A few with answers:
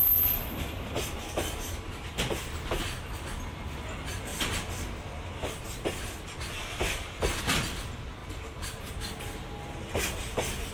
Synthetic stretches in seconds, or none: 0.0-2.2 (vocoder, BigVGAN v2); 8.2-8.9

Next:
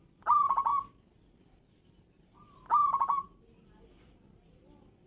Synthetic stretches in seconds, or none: none

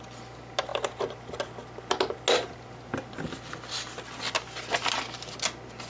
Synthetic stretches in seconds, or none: none